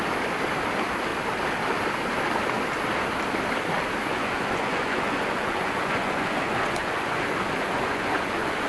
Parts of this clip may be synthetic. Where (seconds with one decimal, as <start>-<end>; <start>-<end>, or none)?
4.1-8.7